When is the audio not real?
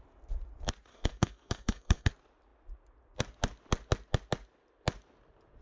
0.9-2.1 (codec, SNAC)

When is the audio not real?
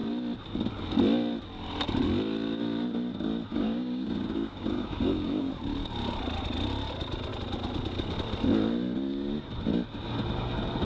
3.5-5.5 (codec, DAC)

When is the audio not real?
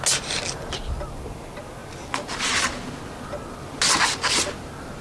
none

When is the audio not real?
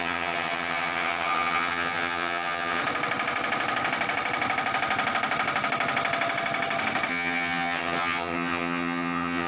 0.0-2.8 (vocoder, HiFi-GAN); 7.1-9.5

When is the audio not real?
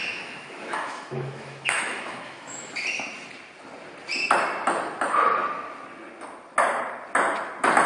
0.0-2.7 (autoencoder, DAC-VAE)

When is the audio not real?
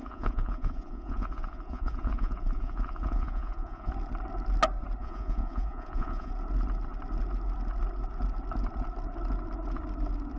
0.0-3.9 (vocoder, Vocos); 5.0-6.3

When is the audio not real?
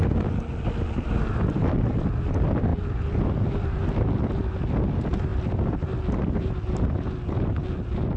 none